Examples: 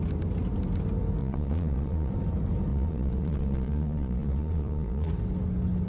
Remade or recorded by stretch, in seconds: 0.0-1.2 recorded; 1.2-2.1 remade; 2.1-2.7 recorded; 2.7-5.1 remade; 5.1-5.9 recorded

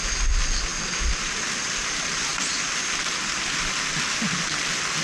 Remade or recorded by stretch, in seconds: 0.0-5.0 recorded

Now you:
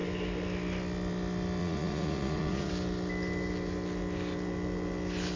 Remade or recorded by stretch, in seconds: 0.0-1.6 recorded; 1.6-2.7 remade; 2.7-5.4 recorded

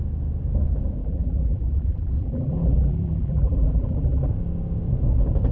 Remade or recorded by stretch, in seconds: 0.0-1.0 recorded; 1.0-4.3 remade; 4.3-5.5 recorded

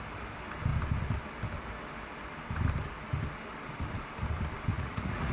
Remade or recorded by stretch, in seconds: 0.0-4.7 recorded; 4.7-5.3 remade

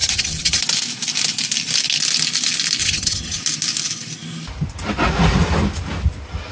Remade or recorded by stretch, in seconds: 0.0-0.6 remade; 0.6-2.8 recorded; 2.8-3.4 remade; 3.4-6.5 recorded